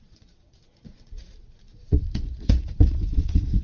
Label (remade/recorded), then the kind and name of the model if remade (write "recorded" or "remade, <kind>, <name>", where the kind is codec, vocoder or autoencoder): remade, vocoder, Vocos